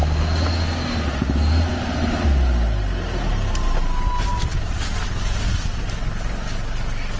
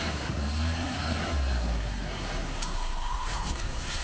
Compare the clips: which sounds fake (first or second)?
second